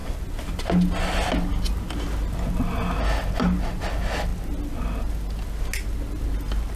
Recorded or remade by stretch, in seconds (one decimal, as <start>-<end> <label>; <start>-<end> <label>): 0.0-6.8 recorded